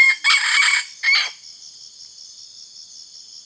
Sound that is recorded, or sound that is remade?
recorded